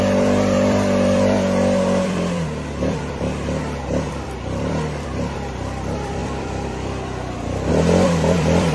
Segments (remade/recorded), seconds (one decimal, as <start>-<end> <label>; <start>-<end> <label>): 0.0-8.7 remade